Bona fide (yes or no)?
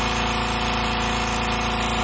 yes